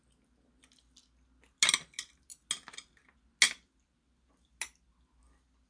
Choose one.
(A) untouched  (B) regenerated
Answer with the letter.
A